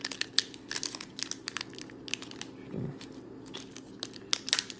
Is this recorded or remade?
recorded